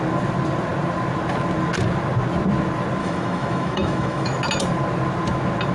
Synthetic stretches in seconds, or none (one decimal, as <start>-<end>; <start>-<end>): 3.0-4.4